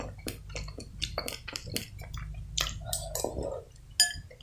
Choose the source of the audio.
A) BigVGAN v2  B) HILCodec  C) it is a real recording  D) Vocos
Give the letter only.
C